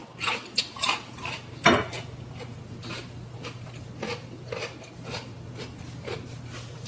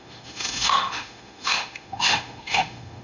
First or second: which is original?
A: first